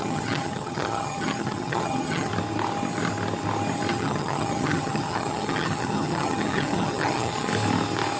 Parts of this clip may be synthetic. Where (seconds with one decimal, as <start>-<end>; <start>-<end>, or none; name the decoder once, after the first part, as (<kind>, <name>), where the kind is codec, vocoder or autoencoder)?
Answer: 0.0-2.3 (vocoder, HiFi-GAN); 3.9-7.5